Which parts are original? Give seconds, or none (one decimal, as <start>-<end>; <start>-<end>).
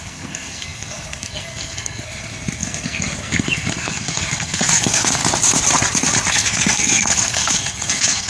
5.2-6.3